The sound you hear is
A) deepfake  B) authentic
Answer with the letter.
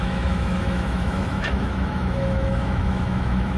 A